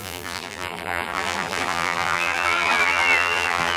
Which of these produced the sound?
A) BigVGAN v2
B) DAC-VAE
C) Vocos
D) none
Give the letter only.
A